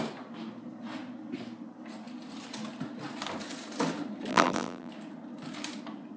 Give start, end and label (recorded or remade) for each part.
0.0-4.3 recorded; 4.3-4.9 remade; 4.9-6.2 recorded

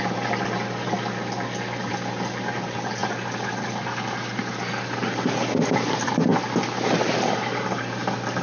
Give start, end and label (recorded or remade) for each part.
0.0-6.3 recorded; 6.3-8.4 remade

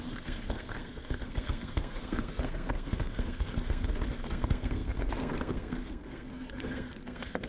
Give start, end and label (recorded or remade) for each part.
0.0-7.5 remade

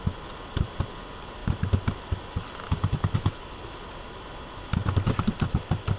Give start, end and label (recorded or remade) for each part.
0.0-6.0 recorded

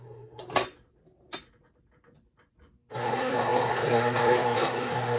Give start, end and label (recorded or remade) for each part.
0.0-0.4 remade; 0.4-2.9 recorded; 2.9-5.2 remade